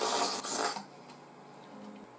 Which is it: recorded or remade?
recorded